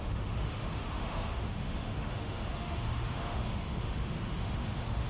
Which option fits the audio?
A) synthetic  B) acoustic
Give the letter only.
A